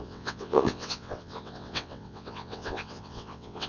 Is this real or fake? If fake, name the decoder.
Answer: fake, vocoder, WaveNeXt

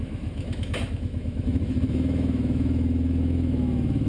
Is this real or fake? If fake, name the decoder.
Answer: fake, autoencoder, DAC-VAE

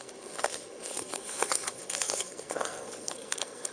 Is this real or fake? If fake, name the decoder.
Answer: fake, codec, SNAC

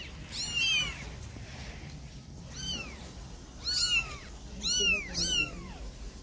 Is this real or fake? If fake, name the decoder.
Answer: real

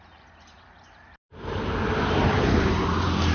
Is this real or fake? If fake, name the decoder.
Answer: fake, vocoder, BigVGAN v2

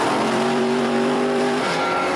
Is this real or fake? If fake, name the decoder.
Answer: fake, vocoder, BigVGAN v2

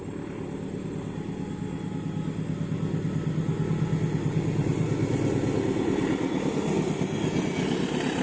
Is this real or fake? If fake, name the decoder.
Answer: real